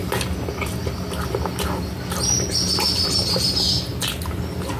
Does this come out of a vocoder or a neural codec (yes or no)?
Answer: no